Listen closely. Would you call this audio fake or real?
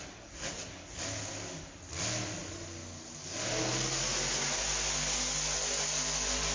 real